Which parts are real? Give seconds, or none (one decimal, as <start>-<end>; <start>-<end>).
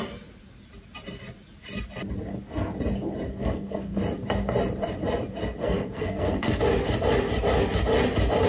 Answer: 0.0-3.3; 4.0-5.6; 6.6-8.5